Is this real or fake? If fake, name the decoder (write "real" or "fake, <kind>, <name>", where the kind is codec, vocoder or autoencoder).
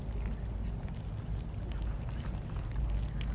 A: real